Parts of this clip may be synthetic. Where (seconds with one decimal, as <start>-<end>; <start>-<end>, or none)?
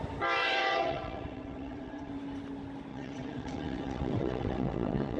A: 0.4-2.1; 2.9-5.2